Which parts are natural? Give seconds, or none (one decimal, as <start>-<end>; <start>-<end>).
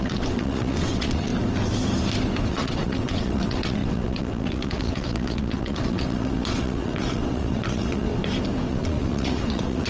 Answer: 1.3-2.5; 8.1-8.7